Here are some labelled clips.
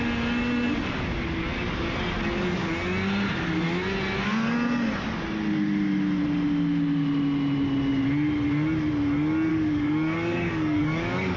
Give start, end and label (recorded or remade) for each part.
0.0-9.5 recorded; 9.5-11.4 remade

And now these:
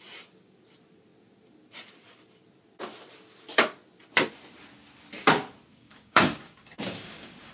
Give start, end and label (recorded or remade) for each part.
0.0-5.7 recorded; 5.7-7.5 remade

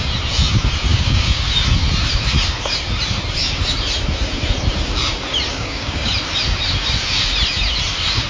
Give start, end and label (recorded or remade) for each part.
0.0-0.9 recorded; 0.9-1.5 remade; 1.5-5.5 recorded; 5.5-6.1 remade; 6.1-8.3 recorded